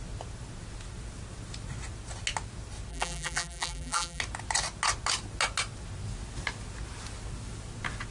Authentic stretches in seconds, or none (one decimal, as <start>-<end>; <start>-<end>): 0.0-2.9; 4.2-8.1